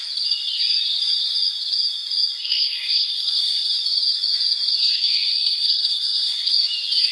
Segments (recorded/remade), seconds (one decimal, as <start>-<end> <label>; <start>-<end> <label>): 0.0-2.4 recorded; 2.4-3.7 remade; 3.7-4.8 recorded; 4.8-6.5 remade; 6.5-7.1 recorded